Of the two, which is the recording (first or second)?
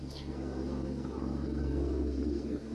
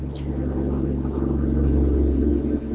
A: second